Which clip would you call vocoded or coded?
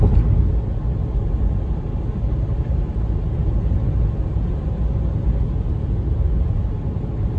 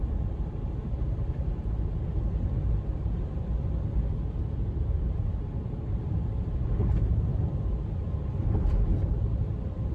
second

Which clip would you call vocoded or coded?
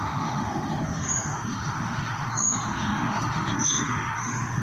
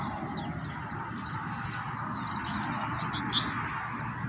first